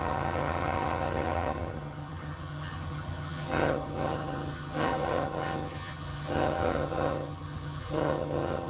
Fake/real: fake